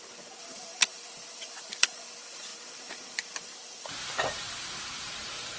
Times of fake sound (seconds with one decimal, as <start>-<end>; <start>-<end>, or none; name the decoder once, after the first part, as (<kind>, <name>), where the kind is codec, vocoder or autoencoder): 0.0-5.6 (vocoder, BigVGAN v2)